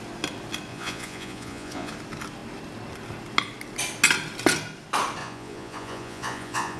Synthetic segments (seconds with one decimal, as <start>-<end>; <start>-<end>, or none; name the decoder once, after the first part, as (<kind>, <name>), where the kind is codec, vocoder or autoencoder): 0.7-1.9 (vocoder, Vocos); 5.2-6.8